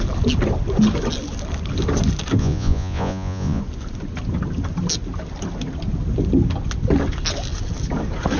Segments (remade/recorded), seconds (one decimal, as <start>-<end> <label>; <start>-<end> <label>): 0.0-2.4 recorded; 2.4-3.6 remade; 3.6-8.4 recorded